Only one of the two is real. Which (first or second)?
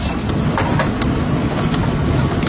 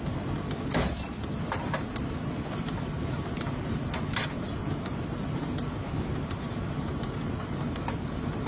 first